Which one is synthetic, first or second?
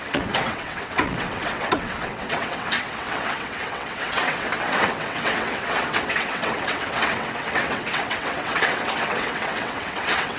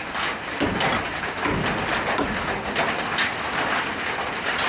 first